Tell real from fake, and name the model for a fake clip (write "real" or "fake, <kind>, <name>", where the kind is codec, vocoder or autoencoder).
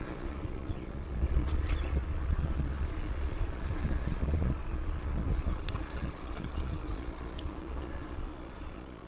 fake, vocoder, Vocos